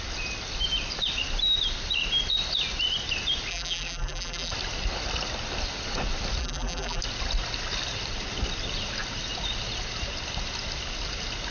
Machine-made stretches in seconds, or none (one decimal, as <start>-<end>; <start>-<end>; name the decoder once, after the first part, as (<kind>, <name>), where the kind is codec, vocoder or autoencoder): 3.5-4.5 (vocoder, BigVGAN v2); 6.4-7.0

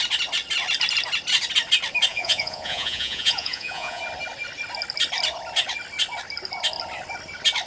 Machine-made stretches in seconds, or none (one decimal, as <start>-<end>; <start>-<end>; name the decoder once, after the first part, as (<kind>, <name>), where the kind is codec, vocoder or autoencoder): 2.1-4.0 (vocoder, Vocos)

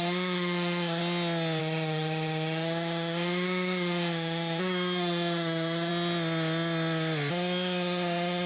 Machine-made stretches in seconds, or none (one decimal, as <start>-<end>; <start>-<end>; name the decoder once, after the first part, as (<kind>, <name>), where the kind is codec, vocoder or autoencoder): 0.0-1.0 (autoencoder, DAC-VAE); 1.6-5.9; 7.3-8.5

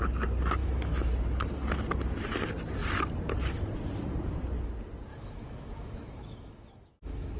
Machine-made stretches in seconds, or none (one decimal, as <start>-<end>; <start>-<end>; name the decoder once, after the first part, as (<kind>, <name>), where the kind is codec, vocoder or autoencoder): 0.6-1.1 (autoencoder, DAC-VAE); 5.1-7.4

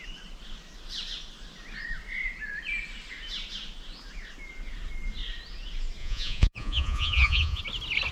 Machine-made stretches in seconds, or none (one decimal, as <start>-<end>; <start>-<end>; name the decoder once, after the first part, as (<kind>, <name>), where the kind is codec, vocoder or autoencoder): 6.0-7.6 (vocoder, Vocos)

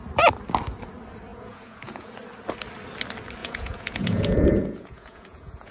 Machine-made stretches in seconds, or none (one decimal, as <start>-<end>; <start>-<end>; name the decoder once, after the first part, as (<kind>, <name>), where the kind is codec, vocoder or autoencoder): 1.3-2.1 (vocoder, Vocos); 3.4-5.7

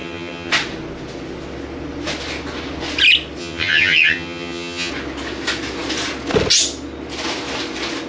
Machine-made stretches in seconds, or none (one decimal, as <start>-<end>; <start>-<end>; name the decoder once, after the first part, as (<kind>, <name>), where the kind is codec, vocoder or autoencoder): 0.0-0.5 (vocoder, HiFi-GAN); 3.4-4.9

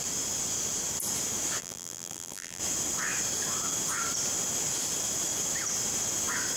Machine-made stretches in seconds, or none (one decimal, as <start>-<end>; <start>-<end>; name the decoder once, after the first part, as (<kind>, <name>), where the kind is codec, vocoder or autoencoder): 1.6-2.6 (vocoder, BigVGAN v2)